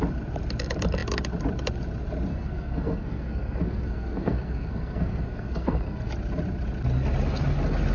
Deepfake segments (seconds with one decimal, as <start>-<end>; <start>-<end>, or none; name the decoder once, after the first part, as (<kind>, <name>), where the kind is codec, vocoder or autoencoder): 2.3-6.1 (codec, SNAC)